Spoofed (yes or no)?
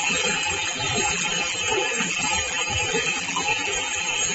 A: yes